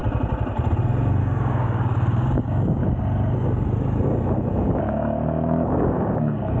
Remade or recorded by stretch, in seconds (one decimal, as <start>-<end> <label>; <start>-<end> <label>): 0.0-1.2 recorded; 1.2-2.8 remade; 2.8-4.8 recorded; 4.8-6.6 remade

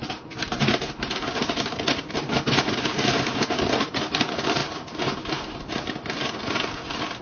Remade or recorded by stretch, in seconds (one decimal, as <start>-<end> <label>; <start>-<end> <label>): 0.0-0.5 remade; 0.5-3.9 recorded; 3.9-4.6 remade; 4.6-7.2 recorded